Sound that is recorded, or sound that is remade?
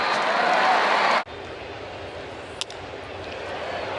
recorded